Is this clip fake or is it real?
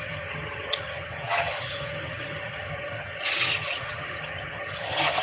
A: fake